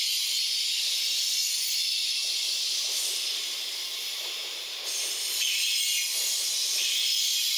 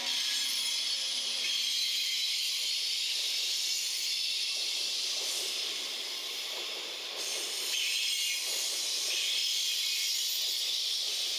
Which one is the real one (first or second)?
first